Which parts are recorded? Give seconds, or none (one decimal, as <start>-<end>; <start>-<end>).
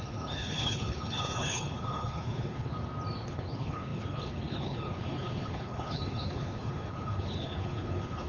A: 2.7-3.3